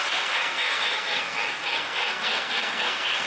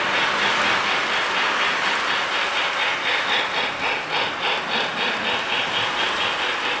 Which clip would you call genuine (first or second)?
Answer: second